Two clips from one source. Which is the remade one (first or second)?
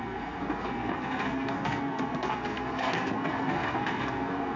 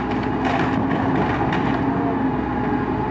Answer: first